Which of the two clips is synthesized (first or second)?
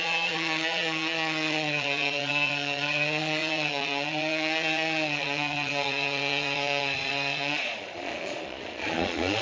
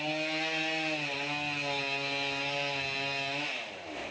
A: first